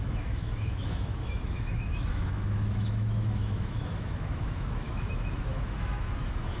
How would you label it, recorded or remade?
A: remade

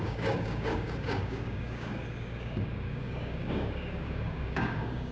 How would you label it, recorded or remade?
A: remade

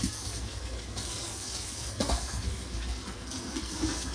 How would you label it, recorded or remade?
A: remade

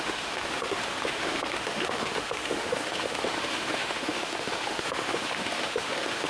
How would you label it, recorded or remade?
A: remade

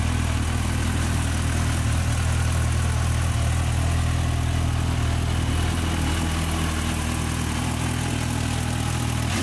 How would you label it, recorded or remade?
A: recorded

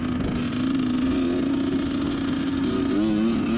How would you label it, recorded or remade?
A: recorded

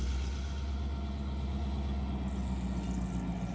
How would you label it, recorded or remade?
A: recorded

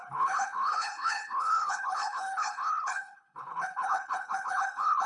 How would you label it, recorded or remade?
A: remade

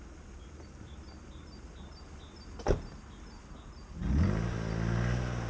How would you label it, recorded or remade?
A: recorded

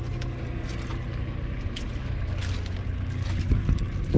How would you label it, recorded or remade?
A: recorded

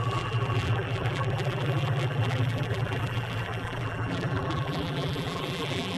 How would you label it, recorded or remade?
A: remade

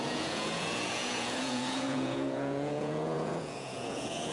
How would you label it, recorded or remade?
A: remade